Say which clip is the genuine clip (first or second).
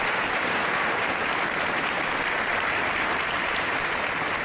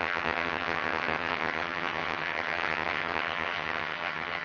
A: first